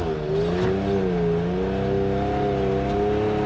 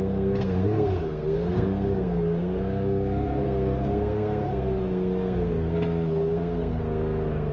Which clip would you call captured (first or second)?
first